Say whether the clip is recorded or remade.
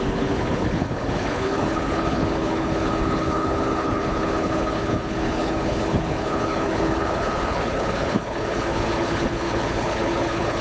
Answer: remade